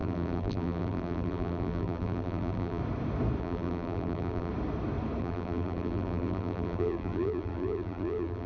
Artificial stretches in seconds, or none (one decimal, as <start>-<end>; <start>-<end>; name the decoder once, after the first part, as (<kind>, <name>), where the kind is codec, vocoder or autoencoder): 0.0-2.8 (vocoder, BigVGAN v2); 3.4-4.5; 5.2-8.5